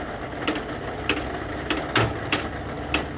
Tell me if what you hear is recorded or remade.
recorded